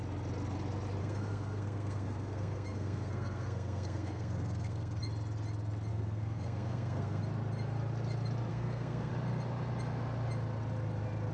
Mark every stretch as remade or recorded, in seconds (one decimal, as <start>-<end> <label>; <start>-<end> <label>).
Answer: 0.0-1.0 recorded; 1.0-5.0 remade; 5.0-5.9 recorded; 5.9-7.2 remade; 7.2-8.5 recorded; 8.5-9.1 remade; 9.1-11.3 recorded